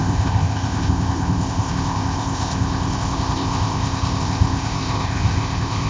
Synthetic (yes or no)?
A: yes